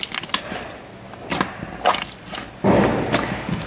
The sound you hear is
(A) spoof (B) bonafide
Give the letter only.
B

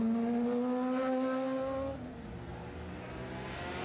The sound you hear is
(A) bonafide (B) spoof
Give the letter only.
A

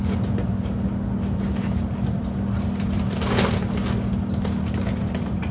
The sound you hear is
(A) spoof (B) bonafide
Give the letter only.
B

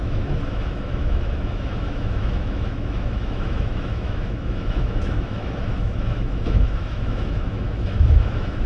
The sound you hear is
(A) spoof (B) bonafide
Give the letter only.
A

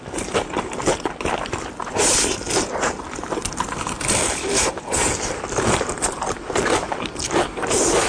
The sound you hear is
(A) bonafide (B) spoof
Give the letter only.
A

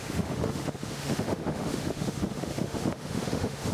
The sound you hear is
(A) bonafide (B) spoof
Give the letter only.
B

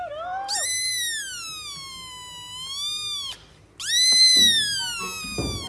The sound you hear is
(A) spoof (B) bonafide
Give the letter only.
B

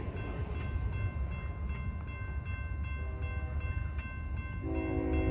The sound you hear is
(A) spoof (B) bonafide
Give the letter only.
B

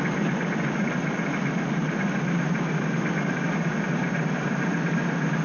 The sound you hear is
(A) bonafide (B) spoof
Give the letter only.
A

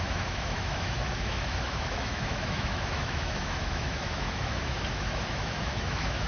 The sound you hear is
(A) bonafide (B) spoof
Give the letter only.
B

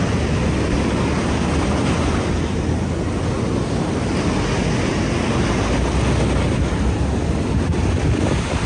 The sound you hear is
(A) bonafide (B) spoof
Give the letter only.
A